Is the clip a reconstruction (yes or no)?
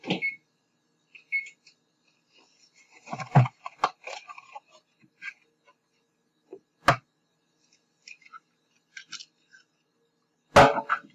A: no